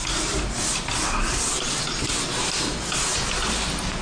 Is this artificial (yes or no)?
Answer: no